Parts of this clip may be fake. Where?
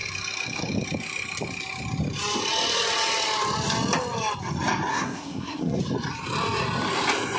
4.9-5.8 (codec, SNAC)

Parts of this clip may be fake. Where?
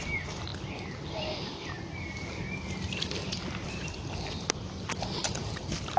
none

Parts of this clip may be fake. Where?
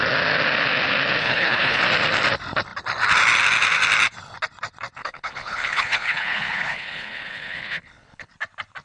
1.2-1.8 (codec, HILCodec); 5.0-8.3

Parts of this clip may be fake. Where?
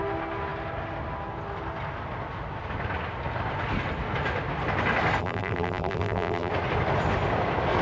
5.2-6.5 (vocoder, BigVGAN v2)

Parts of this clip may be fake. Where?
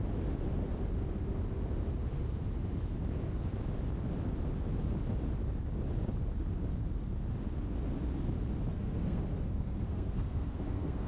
8.7-11.1 (codec, SNAC)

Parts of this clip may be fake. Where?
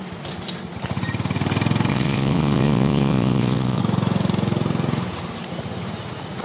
1.9-3.8 (vocoder, WaveNeXt)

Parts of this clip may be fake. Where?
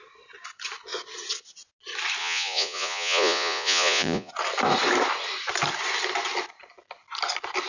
2.2-4.3 (vocoder, Vocos)